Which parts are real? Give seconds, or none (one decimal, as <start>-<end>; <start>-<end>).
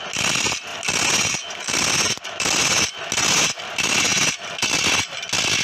0.0-5.6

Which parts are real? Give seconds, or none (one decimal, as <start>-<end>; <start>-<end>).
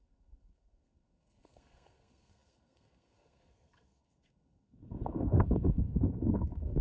none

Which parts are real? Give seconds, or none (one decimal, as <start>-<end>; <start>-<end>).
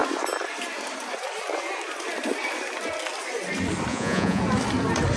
0.0-3.9; 4.4-5.2